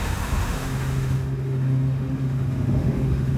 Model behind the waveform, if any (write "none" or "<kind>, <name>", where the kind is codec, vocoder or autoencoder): autoencoder, DAC-VAE